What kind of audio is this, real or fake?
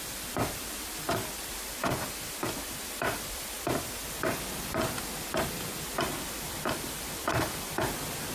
real